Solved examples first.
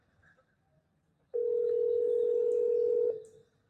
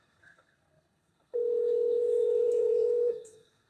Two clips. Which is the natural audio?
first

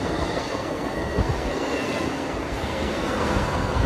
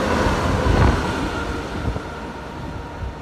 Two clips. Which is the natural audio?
second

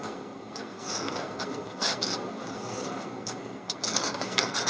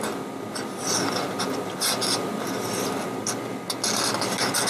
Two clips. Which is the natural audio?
second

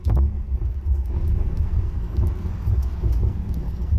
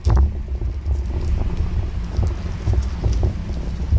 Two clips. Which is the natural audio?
second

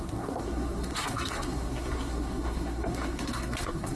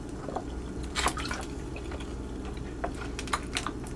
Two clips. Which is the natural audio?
second